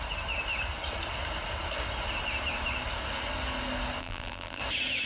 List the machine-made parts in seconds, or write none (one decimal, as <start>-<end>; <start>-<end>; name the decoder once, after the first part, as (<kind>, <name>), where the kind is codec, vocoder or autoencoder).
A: 4.0-4.6 (vocoder, BigVGAN v2)